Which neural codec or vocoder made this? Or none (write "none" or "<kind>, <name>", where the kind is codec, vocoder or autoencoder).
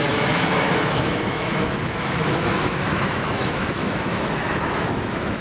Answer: autoencoder, DAC-VAE